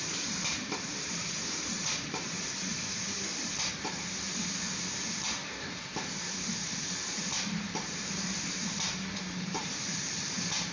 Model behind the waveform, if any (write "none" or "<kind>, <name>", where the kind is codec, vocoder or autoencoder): vocoder, BigVGAN v2